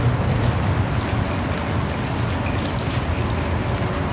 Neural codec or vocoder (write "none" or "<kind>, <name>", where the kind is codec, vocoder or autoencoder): none